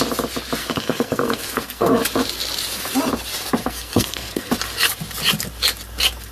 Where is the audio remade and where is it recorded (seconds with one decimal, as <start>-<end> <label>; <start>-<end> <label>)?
0.0-0.6 recorded; 0.6-2.0 remade; 2.0-3.6 recorded; 3.6-4.5 remade; 4.5-6.3 recorded